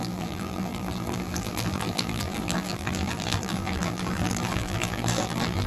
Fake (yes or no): yes